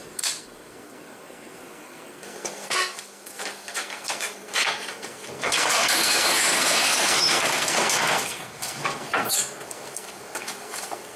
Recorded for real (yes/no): no